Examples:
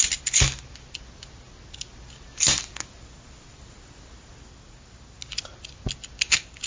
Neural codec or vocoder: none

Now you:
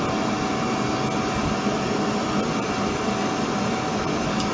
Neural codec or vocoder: none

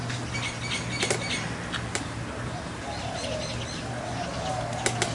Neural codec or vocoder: none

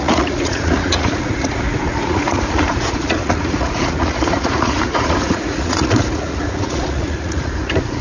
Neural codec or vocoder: vocoder, Vocos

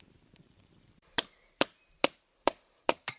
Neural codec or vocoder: vocoder, BigVGAN v2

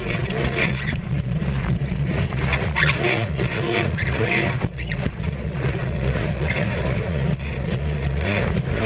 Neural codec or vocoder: vocoder, Vocos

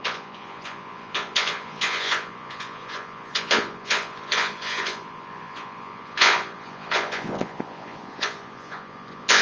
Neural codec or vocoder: vocoder, Vocos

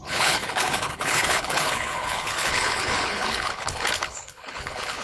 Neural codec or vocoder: codec, HILCodec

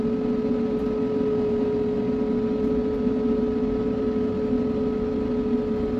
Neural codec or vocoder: none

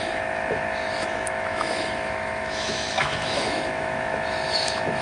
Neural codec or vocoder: autoencoder, DAC-VAE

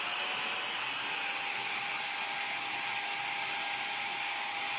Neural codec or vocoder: none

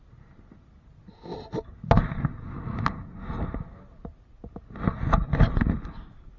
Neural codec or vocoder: none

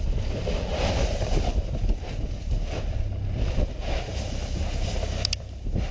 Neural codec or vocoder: none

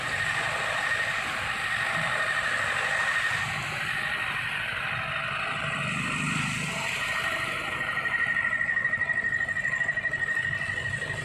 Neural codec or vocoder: none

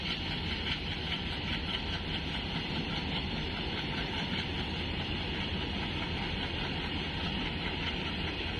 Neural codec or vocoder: none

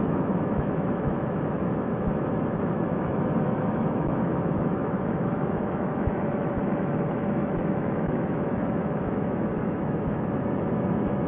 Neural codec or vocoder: autoencoder, DAC-VAE